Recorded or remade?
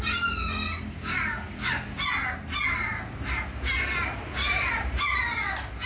recorded